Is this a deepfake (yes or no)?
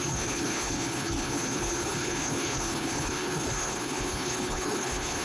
yes